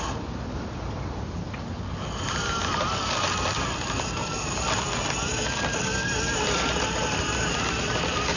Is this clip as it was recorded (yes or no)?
yes